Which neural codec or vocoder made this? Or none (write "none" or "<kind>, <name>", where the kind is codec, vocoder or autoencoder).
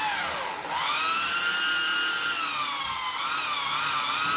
none